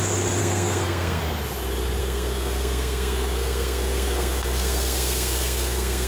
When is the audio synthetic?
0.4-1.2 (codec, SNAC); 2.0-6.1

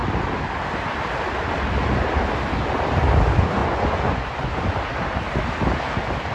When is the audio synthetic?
3.6-4.6 (vocoder, Vocos)

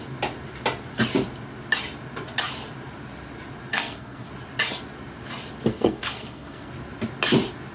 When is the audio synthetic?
3.7-4.3 (codec, SNAC); 5.7-6.7

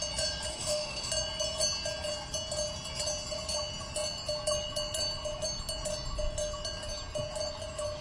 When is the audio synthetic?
0.5-1.1 (autoencoder, DAC-VAE)

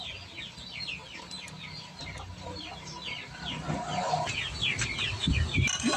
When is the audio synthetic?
none

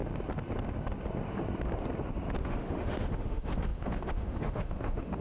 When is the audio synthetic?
2.4-5.2 (autoencoder, DAC-VAE)